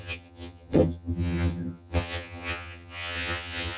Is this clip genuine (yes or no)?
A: no